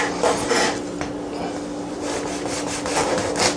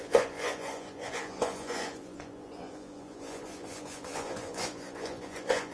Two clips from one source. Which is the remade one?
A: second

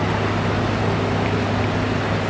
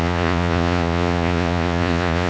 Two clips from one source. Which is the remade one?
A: second